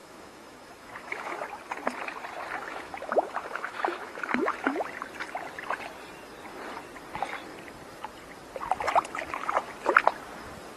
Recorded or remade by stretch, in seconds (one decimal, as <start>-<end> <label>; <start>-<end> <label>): 0.0-1.4 remade; 1.4-2.7 recorded; 2.7-4.8 remade; 4.8-10.8 recorded